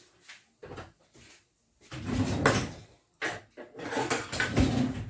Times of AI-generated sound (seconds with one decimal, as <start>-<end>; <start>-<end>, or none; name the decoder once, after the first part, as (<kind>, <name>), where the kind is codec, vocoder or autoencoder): none